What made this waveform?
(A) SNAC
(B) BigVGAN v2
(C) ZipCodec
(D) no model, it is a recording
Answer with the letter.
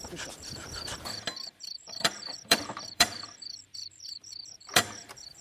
B